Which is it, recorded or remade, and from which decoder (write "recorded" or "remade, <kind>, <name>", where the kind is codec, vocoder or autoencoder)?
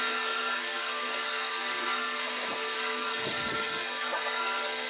remade, codec, SNAC